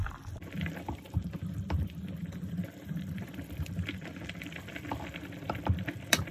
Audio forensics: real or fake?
fake